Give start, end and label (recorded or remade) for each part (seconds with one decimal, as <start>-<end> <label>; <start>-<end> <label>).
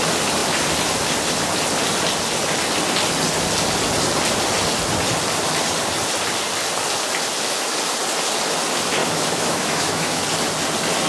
0.0-9.0 recorded; 9.0-10.2 remade; 10.2-11.1 recorded